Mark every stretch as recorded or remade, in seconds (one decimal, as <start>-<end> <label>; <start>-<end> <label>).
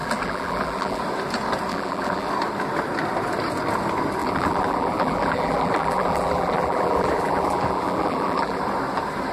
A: 0.0-1.0 remade; 1.0-1.7 recorded; 1.7-2.3 remade; 2.3-4.2 recorded; 4.2-8.6 remade; 8.6-9.3 recorded